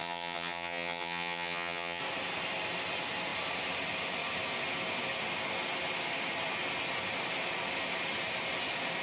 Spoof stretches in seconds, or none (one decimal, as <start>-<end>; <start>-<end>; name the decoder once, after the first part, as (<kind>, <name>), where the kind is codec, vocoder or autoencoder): 0.0-2.0 (vocoder, HiFi-GAN)